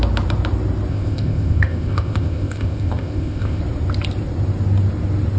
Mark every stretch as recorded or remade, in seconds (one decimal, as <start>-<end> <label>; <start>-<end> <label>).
0.0-0.9 recorded; 0.9-3.6 remade; 3.6-5.4 recorded